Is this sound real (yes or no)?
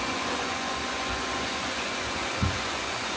no